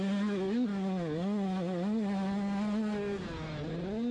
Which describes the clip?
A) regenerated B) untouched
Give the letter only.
B